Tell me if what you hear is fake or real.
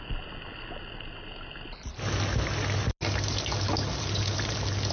real